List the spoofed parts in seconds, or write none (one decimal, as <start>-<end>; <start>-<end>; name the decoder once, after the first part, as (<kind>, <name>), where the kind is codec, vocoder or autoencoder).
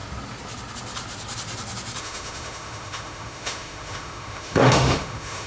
2.0-5.5 (autoencoder, DAC-VAE)